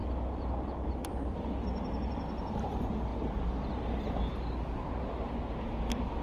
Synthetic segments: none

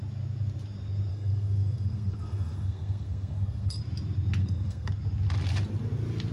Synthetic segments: 1.1-3.8 (codec, SNAC); 4.4-4.9

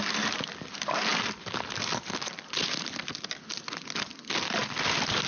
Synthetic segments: none

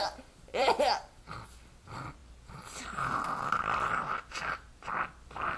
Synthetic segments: 0.5-1.2 (vocoder, BigVGAN v2)

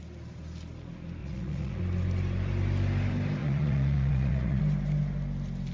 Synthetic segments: 1.2-1.8 (vocoder, Vocos); 3.4-4.6

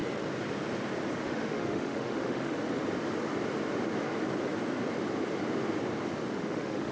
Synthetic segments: 1.1-2.5 (autoencoder, DAC-VAE); 6.4-6.9